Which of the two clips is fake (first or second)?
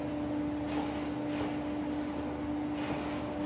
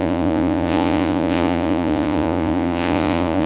second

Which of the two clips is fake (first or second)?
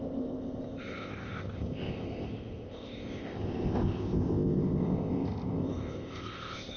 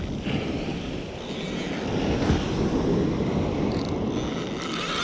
first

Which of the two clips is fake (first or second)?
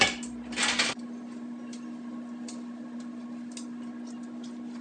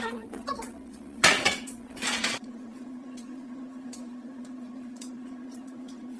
second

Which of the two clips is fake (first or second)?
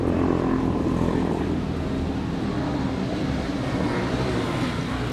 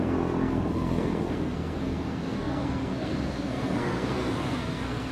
second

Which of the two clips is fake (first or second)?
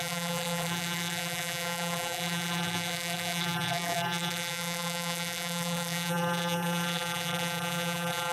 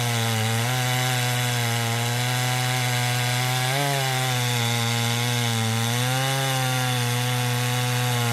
first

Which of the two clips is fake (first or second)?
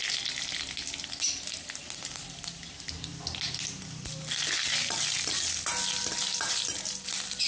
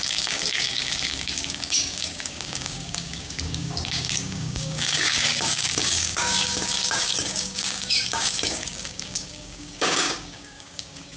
second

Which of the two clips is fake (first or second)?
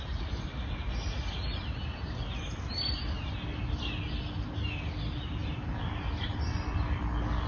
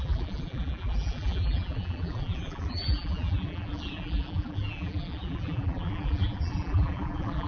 second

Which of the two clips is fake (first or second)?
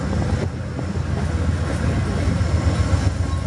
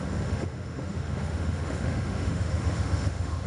second